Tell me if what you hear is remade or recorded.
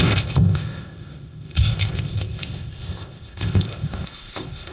remade